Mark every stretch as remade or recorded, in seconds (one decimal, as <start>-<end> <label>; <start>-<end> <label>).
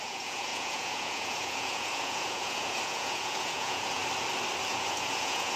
0.0-4.0 remade; 4.0-4.7 recorded; 4.7-5.6 remade